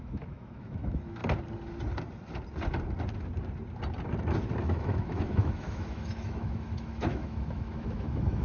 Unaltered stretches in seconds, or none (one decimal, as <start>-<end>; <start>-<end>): 1.2-4.6